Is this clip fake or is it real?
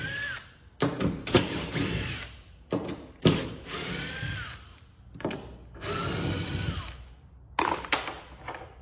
real